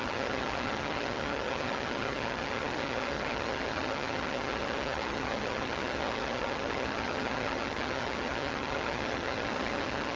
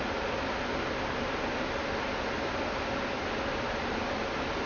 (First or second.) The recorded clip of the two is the second